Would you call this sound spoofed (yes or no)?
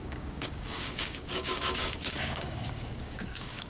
yes